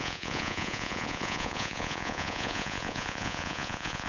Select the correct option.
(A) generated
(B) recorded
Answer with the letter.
A